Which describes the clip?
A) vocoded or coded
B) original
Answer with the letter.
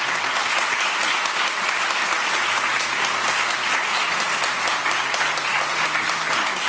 B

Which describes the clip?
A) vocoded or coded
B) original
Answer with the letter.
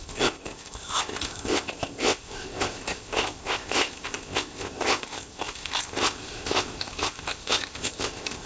A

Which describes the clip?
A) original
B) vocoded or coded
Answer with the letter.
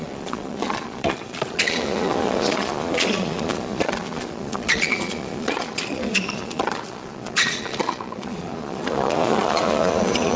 B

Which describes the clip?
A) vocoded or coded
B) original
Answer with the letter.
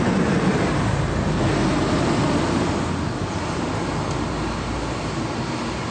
B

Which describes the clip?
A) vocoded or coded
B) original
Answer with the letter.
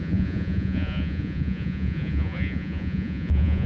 A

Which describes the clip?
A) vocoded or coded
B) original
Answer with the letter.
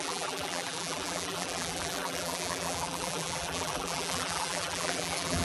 A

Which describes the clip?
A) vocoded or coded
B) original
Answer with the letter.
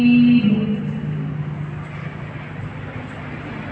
B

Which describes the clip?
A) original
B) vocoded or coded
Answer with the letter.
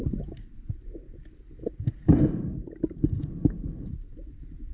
A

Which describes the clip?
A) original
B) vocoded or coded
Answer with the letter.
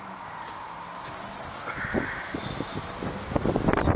A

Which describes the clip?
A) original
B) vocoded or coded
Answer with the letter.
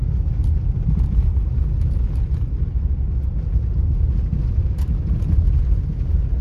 A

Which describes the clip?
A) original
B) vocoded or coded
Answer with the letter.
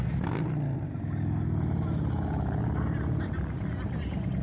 A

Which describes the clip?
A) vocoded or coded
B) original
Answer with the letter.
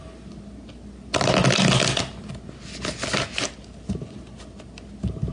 B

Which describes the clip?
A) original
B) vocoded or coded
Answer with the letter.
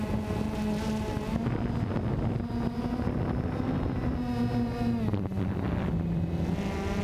A